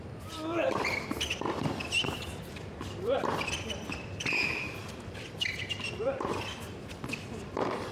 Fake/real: fake